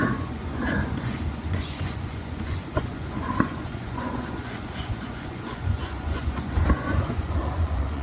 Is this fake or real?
fake